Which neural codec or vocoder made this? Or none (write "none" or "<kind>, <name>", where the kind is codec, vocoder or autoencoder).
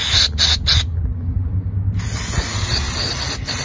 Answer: none